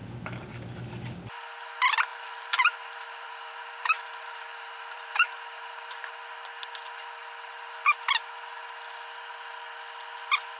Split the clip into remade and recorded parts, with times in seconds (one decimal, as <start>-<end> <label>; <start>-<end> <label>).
0.0-2.1 recorded; 2.1-6.1 remade; 6.1-10.6 recorded